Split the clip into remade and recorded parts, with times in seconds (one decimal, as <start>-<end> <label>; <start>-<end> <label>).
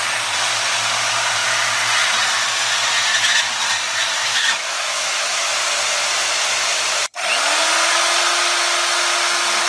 0.0-4.2 recorded; 4.2-5.5 remade; 5.5-9.7 recorded